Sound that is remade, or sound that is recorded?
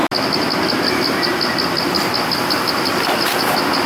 recorded